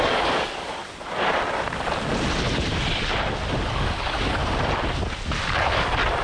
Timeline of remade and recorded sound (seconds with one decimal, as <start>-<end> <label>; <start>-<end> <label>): 0.0-0.8 remade; 0.8-3.7 recorded; 3.7-4.4 remade; 4.4-6.2 recorded